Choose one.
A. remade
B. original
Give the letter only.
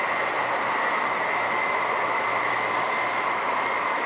B